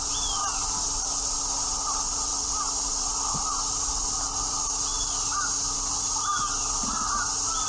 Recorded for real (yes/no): yes